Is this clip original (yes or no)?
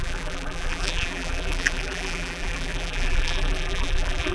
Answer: no